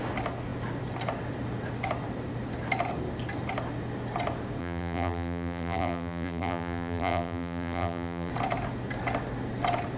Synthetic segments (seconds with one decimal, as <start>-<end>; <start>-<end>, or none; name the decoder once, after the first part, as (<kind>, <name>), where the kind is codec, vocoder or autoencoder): 4.6-8.3 (vocoder, BigVGAN v2)